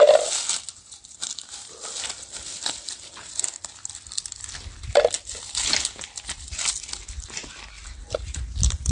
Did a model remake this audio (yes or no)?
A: no